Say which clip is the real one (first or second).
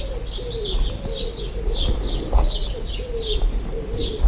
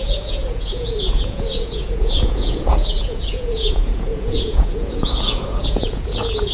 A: first